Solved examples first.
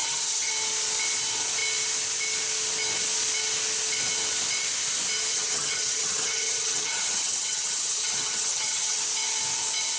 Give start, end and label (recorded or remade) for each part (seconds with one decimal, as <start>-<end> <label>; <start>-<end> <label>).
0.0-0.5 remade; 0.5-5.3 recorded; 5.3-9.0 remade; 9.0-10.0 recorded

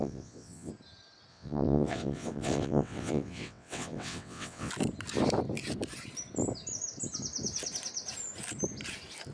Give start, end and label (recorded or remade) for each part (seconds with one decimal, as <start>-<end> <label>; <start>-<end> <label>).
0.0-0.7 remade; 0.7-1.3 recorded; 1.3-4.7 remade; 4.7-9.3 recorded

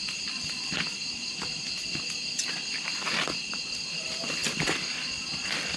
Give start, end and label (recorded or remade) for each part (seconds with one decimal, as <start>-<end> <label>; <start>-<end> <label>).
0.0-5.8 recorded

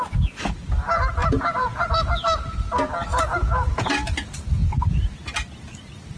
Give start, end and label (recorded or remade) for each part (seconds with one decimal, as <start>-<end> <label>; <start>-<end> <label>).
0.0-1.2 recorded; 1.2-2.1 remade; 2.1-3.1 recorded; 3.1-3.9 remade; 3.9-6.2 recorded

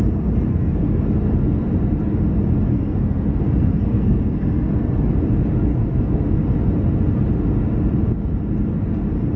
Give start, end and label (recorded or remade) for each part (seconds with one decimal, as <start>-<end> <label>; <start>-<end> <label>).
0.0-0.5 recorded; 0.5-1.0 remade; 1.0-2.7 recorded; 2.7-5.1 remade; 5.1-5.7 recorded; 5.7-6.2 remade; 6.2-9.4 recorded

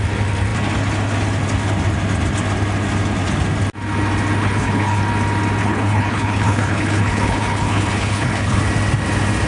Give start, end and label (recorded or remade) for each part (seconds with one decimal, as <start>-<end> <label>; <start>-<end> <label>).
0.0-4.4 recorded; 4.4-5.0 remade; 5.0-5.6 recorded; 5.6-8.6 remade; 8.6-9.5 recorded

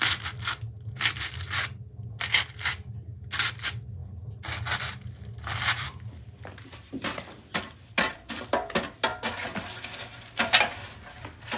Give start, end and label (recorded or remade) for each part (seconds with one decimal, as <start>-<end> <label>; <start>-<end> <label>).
0.0-11.6 recorded

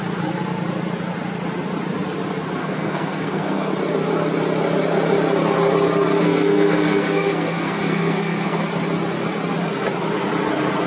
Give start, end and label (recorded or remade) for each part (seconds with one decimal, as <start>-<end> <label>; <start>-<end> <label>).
0.0-2.6 recorded; 2.6-3.7 remade; 3.7-6.2 recorded; 6.2-8.6 remade; 8.6-10.9 recorded